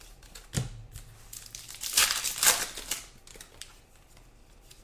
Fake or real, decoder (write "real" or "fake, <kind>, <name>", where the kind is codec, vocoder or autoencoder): real